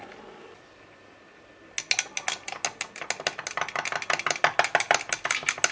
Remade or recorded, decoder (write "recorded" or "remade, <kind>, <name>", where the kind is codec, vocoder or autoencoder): recorded